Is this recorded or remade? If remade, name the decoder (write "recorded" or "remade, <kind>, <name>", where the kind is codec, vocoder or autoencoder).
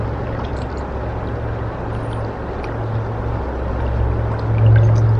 recorded